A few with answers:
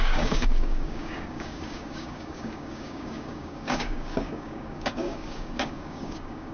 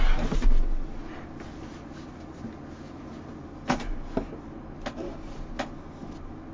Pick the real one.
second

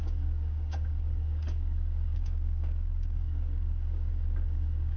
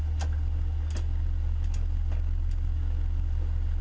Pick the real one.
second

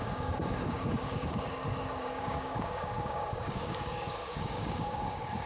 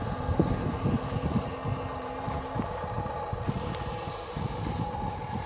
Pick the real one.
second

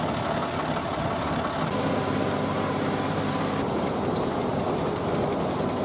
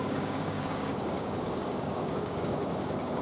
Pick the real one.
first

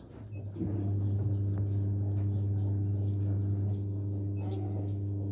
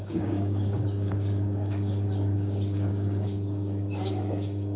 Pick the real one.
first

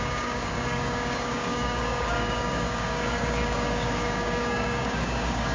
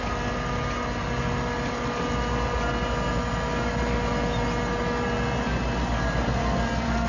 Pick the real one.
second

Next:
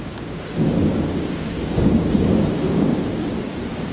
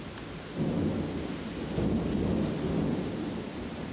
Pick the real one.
second